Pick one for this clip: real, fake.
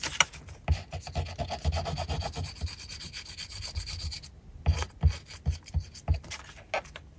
real